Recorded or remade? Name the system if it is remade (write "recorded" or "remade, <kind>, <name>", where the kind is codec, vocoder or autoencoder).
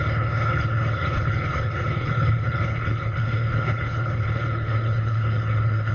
remade, codec, HILCodec